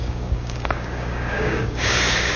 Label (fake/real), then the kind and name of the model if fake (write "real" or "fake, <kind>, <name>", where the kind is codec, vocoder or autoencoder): fake, codec, DAC